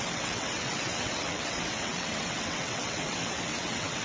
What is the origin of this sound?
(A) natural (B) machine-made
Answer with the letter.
B